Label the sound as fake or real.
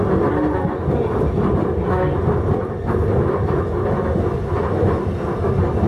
real